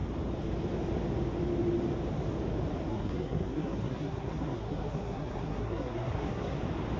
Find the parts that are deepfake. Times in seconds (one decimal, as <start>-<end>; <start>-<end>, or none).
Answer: 2.9-6.6